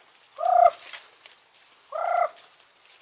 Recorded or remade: recorded